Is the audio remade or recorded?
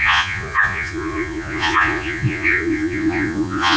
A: remade